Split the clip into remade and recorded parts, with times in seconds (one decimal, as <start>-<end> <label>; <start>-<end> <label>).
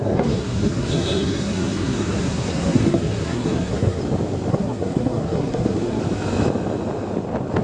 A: 0.0-4.0 remade; 4.0-4.5 recorded; 4.5-6.0 remade; 6.0-7.6 recorded